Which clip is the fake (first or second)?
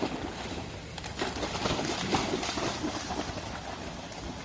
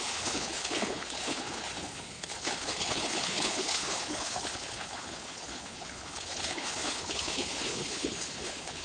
second